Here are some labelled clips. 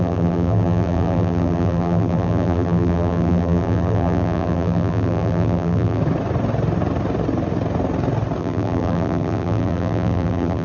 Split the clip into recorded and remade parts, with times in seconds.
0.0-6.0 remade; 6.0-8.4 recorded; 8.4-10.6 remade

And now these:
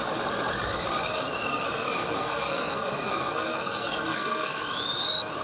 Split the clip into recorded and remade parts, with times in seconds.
0.0-1.5 recorded; 1.5-4.6 remade; 4.6-5.4 recorded